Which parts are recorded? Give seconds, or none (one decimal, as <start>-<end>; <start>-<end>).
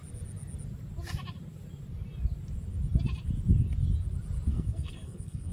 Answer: 0.0-4.5